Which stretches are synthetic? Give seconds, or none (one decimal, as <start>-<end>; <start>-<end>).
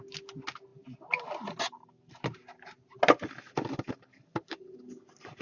none